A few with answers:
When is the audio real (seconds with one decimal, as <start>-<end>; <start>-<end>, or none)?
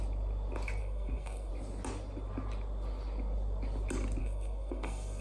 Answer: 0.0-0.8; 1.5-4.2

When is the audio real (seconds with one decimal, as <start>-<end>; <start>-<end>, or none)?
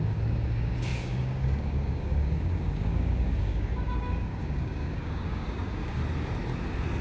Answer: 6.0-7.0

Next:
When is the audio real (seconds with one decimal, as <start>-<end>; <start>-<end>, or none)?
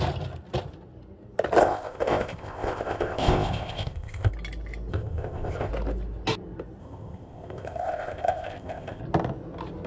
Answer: 0.0-1.6; 4.3-4.9; 5.7-6.8; 9.0-9.9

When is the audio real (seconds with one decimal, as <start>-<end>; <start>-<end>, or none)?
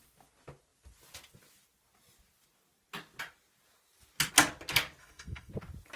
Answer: 0.0-5.0; 5.5-6.0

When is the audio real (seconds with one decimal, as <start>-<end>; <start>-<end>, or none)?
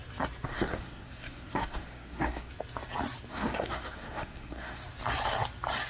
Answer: 0.0-0.5; 2.5-3.3; 4.8-5.9